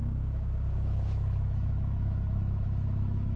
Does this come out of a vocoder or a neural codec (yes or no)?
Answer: yes